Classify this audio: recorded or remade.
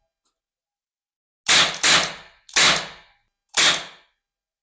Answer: recorded